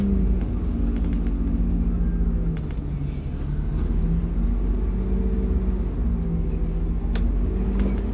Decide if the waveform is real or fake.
real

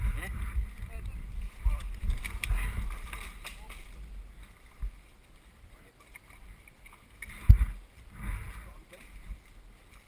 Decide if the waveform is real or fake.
real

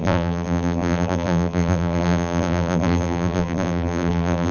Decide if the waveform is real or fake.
fake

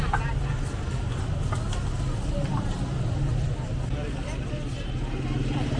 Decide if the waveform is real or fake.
real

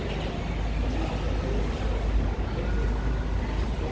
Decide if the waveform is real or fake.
real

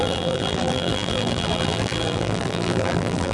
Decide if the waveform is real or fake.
fake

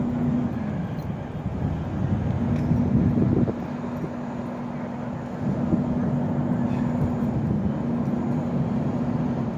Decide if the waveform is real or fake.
real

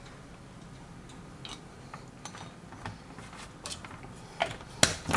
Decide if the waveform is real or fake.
real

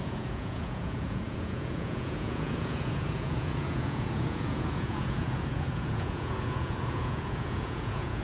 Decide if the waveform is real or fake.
fake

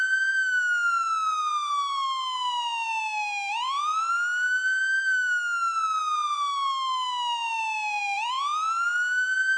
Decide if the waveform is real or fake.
real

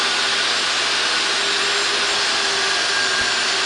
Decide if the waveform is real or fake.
real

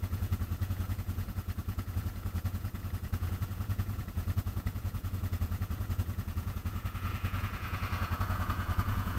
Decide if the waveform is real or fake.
fake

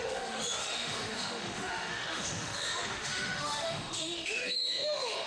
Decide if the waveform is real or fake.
fake